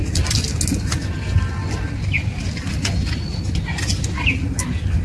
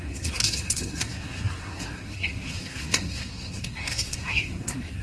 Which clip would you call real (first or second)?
first